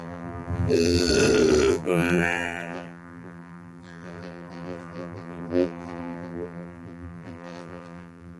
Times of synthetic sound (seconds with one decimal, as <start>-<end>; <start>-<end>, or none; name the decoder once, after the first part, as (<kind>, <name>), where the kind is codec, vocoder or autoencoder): 0.0-1.1 (vocoder, BigVGAN v2); 1.7-8.4